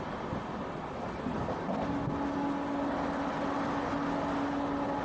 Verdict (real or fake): real